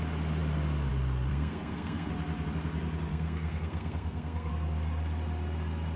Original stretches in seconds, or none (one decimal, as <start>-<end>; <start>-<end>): 0.0-1.3; 2.1-3.1; 4.5-6.0